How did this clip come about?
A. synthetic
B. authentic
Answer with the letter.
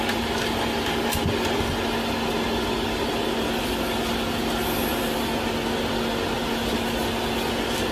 B